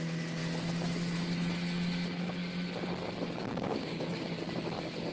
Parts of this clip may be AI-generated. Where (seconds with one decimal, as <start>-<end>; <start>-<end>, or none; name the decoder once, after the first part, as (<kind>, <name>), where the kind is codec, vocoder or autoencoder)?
0.0-0.4 (codec, DAC); 3.5-4.3

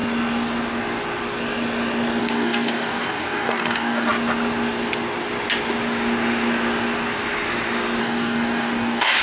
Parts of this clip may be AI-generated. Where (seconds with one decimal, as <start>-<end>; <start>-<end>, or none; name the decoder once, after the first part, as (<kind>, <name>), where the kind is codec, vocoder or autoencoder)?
2.2-4.1 (codec, DAC); 8.0-9.2

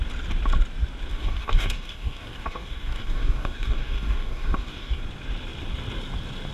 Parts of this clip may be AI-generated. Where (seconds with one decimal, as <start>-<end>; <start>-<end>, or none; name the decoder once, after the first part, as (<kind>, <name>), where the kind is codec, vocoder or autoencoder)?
1.1-5.0 (codec, DAC)

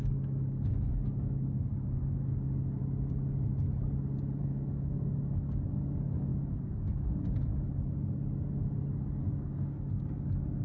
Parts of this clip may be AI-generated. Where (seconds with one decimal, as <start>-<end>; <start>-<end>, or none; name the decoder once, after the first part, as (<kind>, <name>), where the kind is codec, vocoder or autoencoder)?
0.0-2.8 (codec, DAC); 4.4-7.5; 9.2-10.6

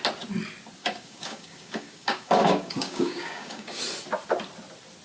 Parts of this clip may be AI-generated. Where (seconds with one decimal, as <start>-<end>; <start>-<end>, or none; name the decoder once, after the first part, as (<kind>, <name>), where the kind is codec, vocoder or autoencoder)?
0.8-3.8 (codec, DAC)

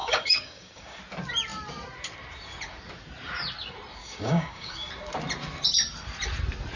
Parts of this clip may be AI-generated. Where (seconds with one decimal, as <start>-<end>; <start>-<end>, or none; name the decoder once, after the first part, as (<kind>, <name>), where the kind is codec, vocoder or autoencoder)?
0.0-1.0 (codec, DAC); 4.0-4.9

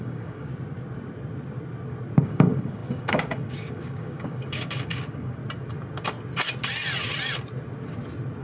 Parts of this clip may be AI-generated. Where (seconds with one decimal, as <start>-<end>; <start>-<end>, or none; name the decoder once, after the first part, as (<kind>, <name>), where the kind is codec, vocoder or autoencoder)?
0.0-0.5 (codec, DAC); 2.2-5.4